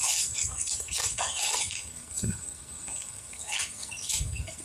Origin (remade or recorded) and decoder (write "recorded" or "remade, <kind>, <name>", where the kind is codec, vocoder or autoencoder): remade, codec, SNAC